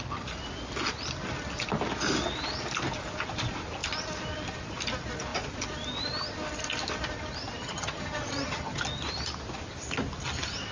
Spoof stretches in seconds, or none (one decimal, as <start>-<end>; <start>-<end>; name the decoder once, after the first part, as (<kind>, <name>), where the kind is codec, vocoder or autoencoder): 7.6-8.8 (vocoder, HiFi-GAN)